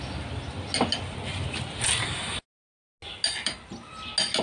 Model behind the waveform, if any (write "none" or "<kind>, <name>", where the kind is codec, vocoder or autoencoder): none